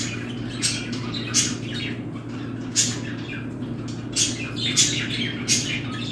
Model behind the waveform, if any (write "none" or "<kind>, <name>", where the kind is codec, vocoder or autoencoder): none